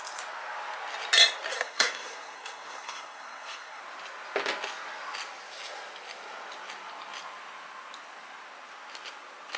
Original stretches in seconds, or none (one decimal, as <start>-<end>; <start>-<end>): 0.0-1.5; 3.8-9.6

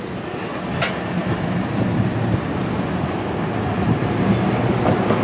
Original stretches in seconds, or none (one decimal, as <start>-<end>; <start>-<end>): 0.0-5.2

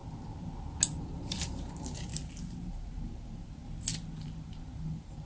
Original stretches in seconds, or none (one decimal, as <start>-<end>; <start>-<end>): 0.0-1.0; 2.1-2.7; 3.6-4.2

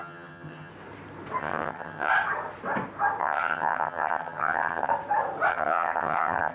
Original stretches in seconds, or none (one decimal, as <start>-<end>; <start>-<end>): 0.7-1.4; 2.1-3.2; 4.9-5.5